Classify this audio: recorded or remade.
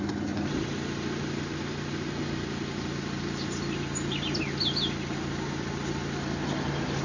recorded